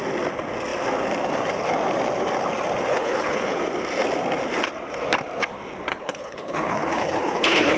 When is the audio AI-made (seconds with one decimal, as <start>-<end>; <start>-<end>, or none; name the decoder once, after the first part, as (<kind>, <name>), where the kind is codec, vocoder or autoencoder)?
2.9-3.6 (codec, HILCodec); 5.9-7.8